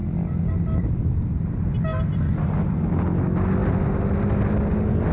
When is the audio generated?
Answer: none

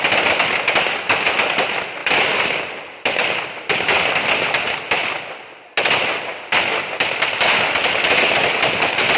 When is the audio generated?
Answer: 2.0-4.2 (vocoder, BigVGAN v2)

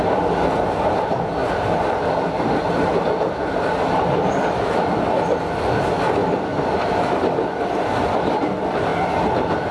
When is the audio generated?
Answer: 1.4-2.7 (vocoder, BigVGAN v2)

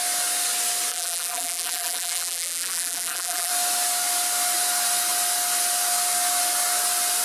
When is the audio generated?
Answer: 0.9-3.5 (vocoder, BigVGAN v2)

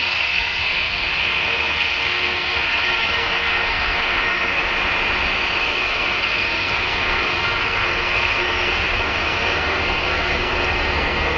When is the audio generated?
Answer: 0.0-4.6 (codec, SNAC); 5.6-11.4

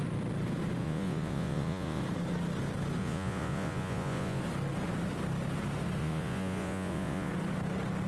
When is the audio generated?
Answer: 0.8-2.0 (vocoder, Vocos); 3.0-4.4; 6.0-7.3

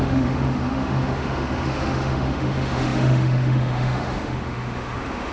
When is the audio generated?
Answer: 0.0-5.3 (autoencoder, DAC-VAE)

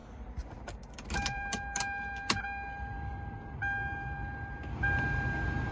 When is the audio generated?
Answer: 0.6-5.7 (vocoder, BigVGAN v2)